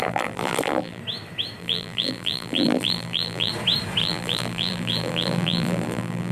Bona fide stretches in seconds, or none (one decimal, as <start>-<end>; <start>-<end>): 1.0-1.6; 3.5-4.0